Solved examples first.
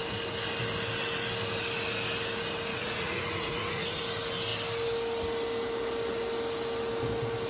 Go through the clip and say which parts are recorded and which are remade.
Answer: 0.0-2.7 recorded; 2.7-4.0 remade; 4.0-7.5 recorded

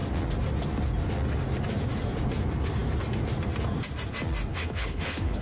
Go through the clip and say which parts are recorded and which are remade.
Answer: 0.0-4.5 recorded; 4.5-5.4 remade